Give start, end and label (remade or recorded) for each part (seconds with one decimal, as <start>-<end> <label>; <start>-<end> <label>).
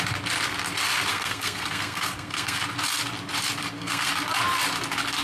0.0-1.1 recorded; 1.1-2.6 remade; 2.6-3.6 recorded; 3.6-4.1 remade; 4.1-5.2 recorded